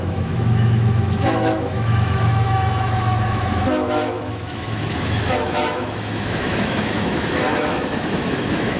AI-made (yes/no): yes